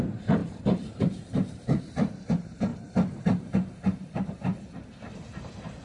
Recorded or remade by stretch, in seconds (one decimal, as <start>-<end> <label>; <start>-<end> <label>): 0.0-2.7 remade; 2.7-3.4 recorded; 3.4-4.5 remade; 4.5-5.8 recorded